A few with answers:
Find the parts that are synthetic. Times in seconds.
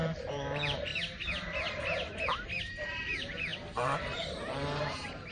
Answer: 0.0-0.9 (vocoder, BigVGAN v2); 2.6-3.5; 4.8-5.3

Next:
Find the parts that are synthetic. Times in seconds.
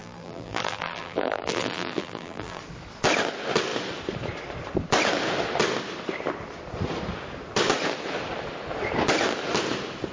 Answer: 0.0-2.6 (vocoder, BigVGAN v2)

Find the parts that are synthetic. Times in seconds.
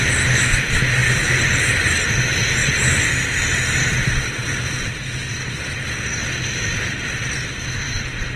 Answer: none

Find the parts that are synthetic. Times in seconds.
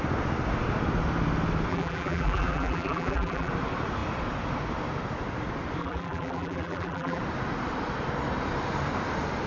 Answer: 1.7-3.5 (vocoder, BigVGAN v2); 5.8-7.2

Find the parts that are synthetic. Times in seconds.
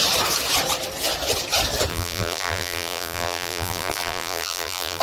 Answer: 1.9-5.0 (vocoder, BigVGAN v2)